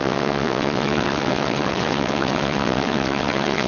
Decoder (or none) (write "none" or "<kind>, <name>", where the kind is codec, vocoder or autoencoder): vocoder, WaveNeXt